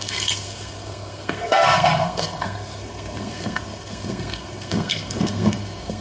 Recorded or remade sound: remade